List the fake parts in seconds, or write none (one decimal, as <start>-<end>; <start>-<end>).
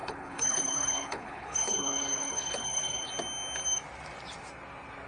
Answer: 0.0-3.1